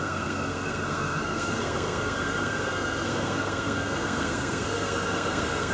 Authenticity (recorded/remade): remade